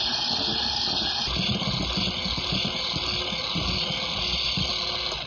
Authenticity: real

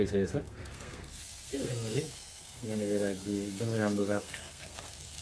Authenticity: fake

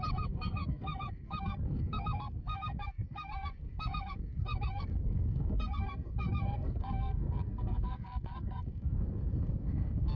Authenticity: fake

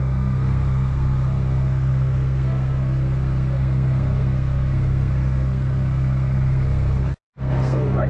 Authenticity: fake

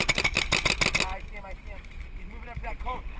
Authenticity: real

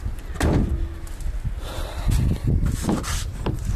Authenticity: real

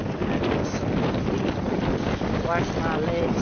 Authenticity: real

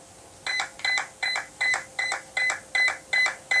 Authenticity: real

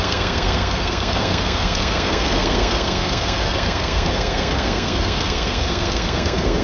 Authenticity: fake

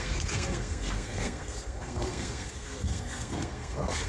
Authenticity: fake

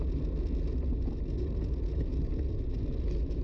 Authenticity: real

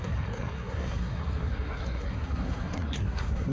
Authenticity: fake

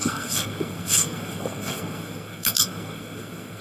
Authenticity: fake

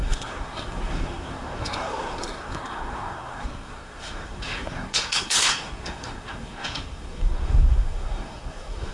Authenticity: fake